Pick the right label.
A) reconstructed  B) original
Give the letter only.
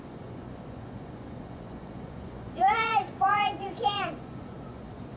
A